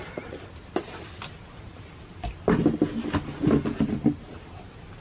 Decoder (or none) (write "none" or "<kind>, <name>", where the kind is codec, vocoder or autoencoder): none